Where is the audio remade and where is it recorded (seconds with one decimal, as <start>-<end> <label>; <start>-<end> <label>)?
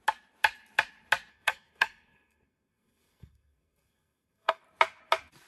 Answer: 0.0-1.3 recorded; 1.3-4.6 remade; 4.6-5.5 recorded